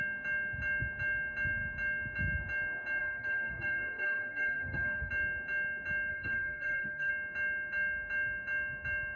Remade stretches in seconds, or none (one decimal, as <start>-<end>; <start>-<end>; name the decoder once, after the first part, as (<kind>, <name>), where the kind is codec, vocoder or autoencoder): 3.0-5.1 (codec, SNAC); 6.1-7.1